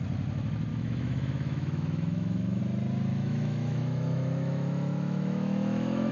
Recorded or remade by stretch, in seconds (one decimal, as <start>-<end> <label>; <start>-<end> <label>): 0.0-0.7 recorded; 0.7-2.6 remade; 2.6-3.1 recorded; 3.1-6.1 remade